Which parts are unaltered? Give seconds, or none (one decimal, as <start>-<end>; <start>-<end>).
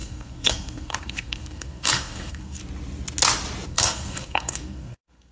2.6-3.7